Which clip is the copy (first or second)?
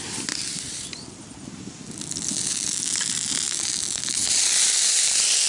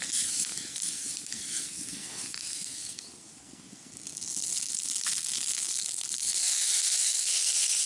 second